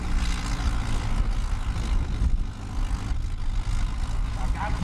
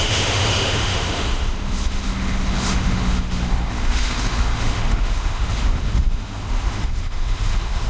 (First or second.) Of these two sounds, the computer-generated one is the second